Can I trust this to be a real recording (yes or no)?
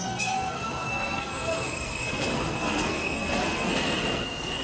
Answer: no